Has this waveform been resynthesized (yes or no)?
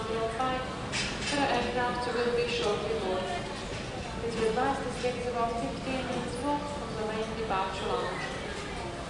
no